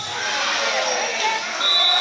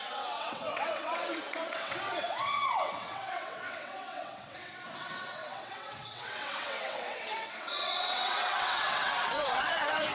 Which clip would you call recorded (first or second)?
first